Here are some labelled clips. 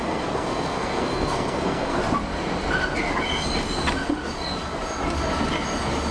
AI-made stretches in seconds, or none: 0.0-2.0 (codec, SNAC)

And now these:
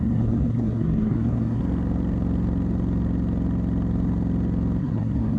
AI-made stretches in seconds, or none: 0.0-1.6 (codec, SNAC); 4.8-5.4

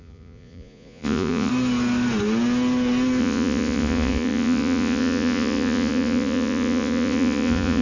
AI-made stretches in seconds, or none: 0.0-1.5 (vocoder, Vocos); 3.2-7.8

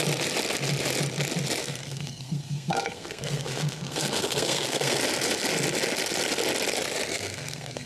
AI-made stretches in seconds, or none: 1.6-5.0 (codec, SNAC); 7.1-7.9

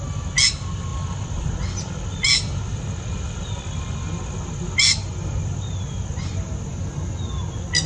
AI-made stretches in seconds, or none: none

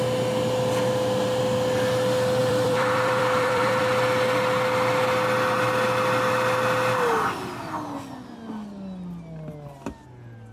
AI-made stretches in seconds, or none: 2.4-3.8 (vocoder, BigVGAN v2)